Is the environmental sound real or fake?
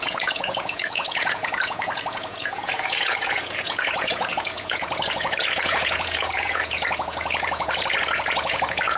fake